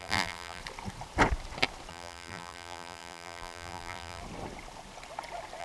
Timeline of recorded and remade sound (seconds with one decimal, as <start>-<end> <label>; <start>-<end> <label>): 0.0-0.6 remade; 0.6-1.9 recorded; 1.9-4.2 remade; 4.2-5.6 recorded